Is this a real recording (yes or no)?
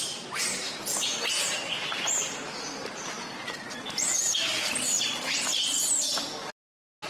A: yes